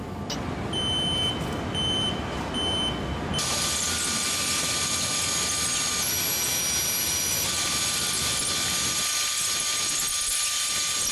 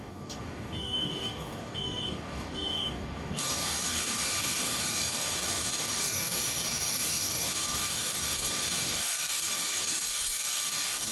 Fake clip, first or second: second